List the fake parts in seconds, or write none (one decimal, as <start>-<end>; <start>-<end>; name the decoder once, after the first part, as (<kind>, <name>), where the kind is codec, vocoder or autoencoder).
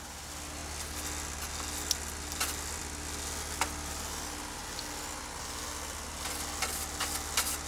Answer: none